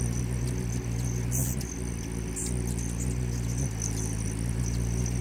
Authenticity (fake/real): real